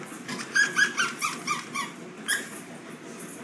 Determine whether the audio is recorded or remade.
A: recorded